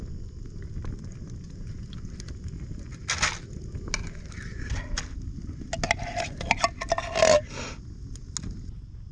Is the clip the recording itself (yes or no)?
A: yes